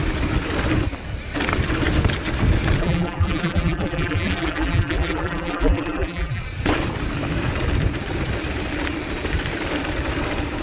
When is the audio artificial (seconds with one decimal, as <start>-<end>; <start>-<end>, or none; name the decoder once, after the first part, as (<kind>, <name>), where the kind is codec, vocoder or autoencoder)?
2.8-6.4 (vocoder, BigVGAN v2)